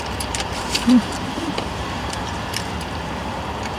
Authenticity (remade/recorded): remade